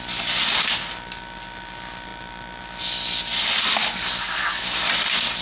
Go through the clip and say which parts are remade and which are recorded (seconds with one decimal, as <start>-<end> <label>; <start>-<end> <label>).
0.0-5.4 recorded